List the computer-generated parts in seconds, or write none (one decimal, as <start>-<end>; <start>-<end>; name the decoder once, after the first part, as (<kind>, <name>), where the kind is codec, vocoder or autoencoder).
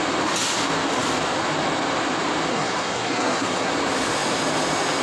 2.5-3.7 (codec, SNAC)